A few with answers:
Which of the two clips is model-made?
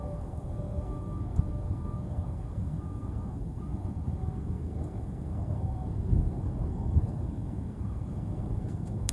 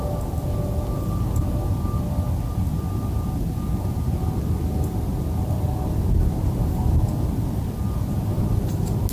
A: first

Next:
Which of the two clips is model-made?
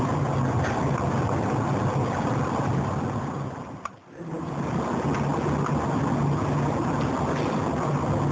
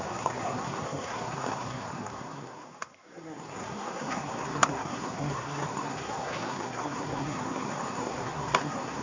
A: second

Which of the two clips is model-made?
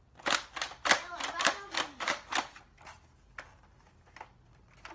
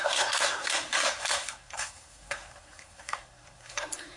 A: second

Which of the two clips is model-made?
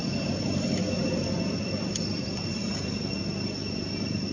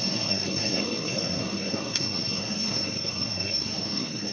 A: second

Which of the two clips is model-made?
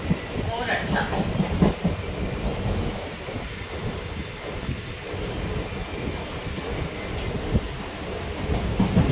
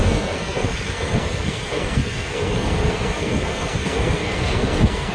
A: second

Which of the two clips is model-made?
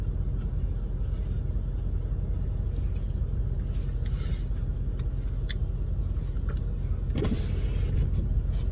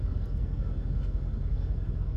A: second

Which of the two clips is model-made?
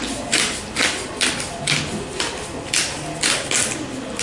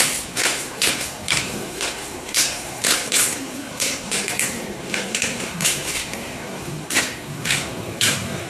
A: second